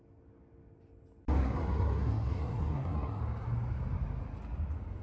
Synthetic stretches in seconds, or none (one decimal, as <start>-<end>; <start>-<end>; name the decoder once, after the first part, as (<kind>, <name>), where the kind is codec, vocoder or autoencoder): 1.4-3.2 (codec, SNAC)